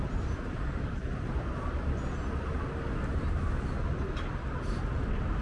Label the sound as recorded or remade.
recorded